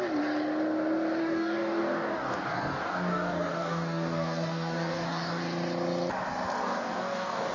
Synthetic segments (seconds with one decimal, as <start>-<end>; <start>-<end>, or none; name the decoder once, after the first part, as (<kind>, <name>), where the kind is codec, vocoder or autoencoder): 1.2-5.4 (codec, DAC); 6.6-7.5